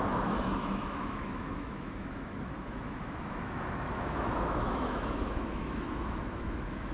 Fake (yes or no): yes